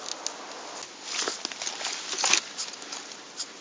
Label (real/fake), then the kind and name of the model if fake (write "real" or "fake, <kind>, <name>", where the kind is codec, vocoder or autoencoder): real